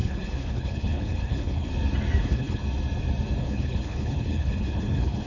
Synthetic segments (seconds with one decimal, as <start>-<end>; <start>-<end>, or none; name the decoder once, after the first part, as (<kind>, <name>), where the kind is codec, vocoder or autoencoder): 0.0-1.7 (codec, HILCodec); 2.2-2.6; 3.4-5.3